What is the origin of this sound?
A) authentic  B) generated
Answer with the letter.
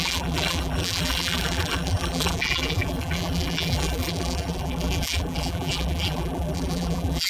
B